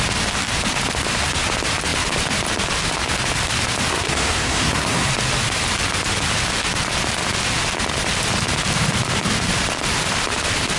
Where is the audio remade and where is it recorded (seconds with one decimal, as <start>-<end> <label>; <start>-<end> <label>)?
0.0-3.9 recorded; 3.9-5.1 remade; 5.1-10.8 recorded